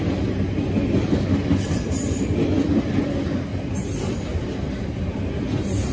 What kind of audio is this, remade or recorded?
recorded